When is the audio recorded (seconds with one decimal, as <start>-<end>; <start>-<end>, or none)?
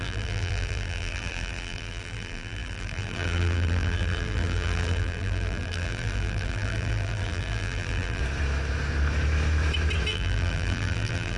8.2-10.1